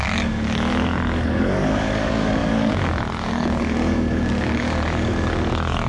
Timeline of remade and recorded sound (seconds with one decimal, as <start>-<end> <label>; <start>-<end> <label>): 0.0-5.9 remade